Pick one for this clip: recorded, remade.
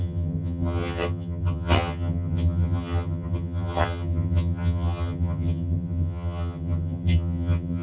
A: remade